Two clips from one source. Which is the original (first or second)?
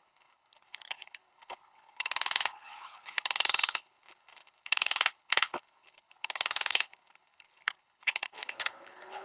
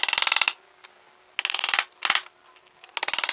second